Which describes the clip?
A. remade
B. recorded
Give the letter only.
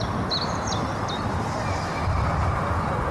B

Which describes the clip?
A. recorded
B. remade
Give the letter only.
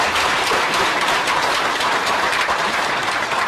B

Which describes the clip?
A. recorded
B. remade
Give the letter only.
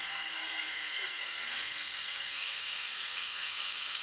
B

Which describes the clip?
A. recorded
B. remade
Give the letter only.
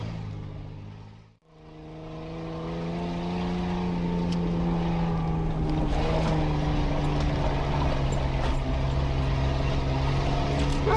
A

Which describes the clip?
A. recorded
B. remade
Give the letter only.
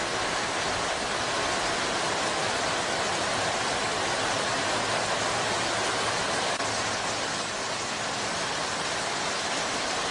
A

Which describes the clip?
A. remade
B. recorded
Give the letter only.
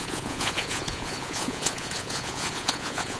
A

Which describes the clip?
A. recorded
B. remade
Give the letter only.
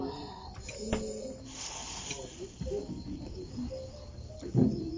A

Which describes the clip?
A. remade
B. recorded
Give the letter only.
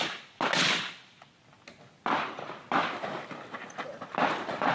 B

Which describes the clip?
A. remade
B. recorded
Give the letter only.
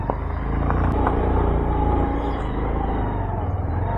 B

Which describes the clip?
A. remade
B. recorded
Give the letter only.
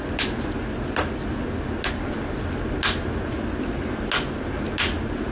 B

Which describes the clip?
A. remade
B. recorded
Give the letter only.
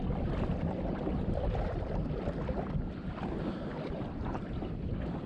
B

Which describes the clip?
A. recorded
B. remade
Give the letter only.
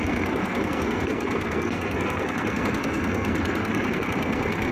B